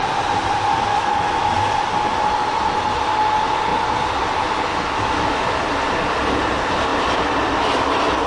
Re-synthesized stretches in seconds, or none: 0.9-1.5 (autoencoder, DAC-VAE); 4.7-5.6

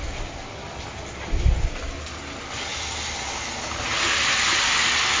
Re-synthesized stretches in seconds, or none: none

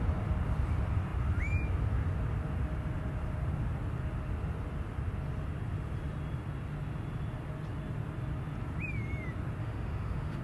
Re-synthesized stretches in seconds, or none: 9.6-10.4 (autoencoder, DAC-VAE)